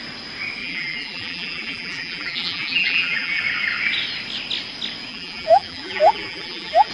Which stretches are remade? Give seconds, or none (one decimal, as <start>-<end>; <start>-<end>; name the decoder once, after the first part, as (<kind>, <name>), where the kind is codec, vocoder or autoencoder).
0.6-3.4 (vocoder, BigVGAN v2); 5.1-6.9